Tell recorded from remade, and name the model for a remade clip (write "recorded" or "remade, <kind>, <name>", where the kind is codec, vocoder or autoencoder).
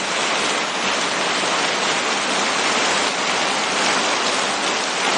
recorded